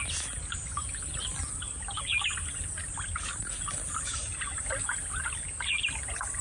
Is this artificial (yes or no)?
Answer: no